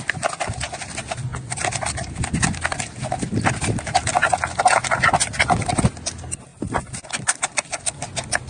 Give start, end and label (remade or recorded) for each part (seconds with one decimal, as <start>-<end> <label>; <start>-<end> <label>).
0.0-8.5 recorded